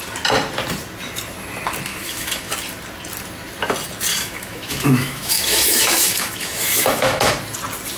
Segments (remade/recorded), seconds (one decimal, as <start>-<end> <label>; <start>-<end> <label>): 0.0-1.9 recorded; 1.9-2.5 remade; 2.5-4.1 recorded; 4.1-7.3 remade; 7.3-8.0 recorded